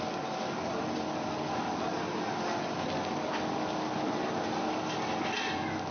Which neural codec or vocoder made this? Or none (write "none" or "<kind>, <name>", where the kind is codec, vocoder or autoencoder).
none